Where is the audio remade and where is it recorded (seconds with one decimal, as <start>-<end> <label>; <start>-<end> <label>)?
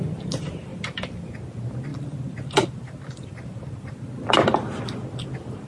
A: 0.0-0.7 recorded; 0.7-1.3 remade; 1.3-1.9 recorded; 1.9-5.3 remade; 5.3-5.7 recorded